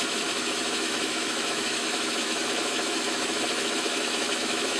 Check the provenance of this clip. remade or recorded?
remade